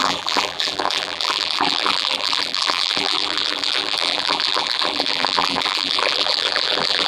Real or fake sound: fake